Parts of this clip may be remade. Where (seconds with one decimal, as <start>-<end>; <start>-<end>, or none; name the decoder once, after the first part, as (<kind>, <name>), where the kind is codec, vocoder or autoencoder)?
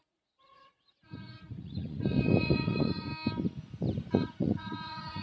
0.0-3.1 (vocoder, Vocos); 4.1-5.2